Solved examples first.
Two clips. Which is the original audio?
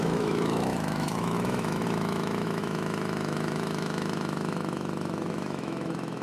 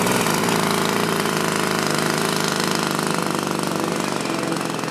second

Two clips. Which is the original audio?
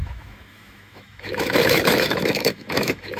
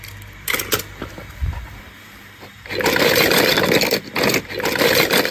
second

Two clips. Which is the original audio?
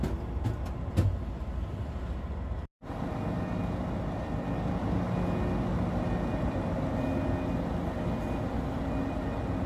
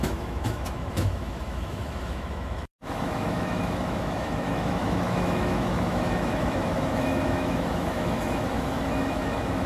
first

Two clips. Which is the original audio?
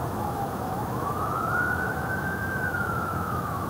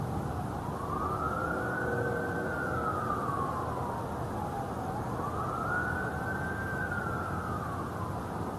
second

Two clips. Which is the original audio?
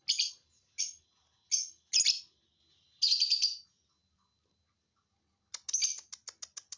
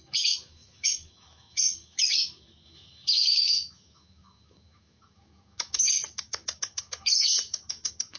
first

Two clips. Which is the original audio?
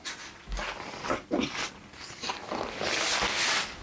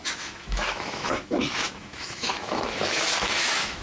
first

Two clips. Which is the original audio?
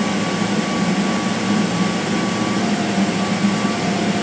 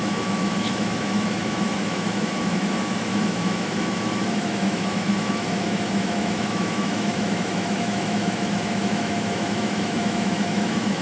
first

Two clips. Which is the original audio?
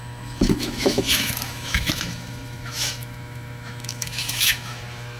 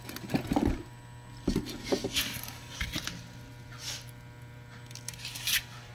second